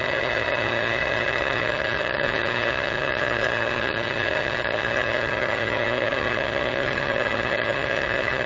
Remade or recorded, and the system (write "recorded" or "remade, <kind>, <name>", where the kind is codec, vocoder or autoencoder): remade, vocoder, HiFi-GAN